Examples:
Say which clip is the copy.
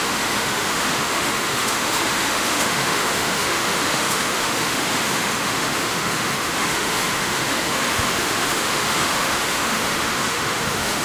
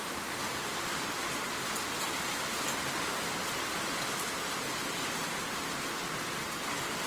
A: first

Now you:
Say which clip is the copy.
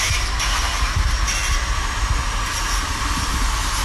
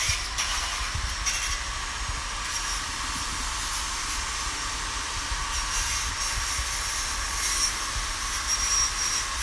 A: second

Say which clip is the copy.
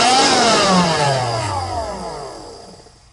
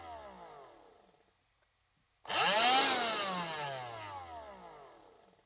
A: first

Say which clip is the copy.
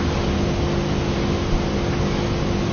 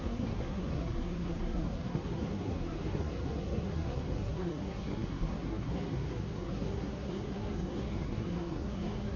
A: second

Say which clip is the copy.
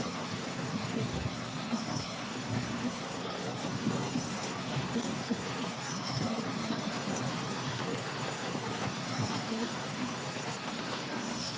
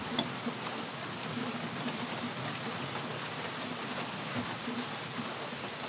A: first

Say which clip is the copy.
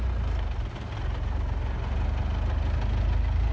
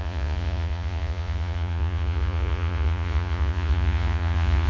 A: second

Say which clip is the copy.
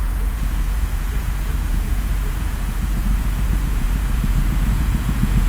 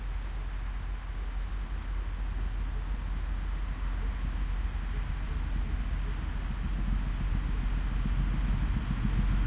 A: first